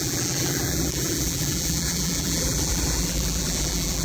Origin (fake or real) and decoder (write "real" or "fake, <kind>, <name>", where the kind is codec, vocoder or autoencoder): fake, vocoder, BigVGAN v2